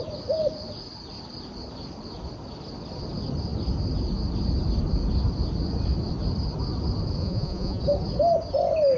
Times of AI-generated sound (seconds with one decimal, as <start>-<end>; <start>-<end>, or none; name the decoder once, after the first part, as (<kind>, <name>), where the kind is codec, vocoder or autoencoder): 7.2-7.8 (vocoder, Vocos)